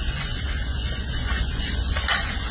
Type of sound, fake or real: fake